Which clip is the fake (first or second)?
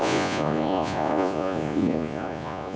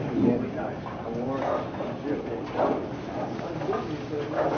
first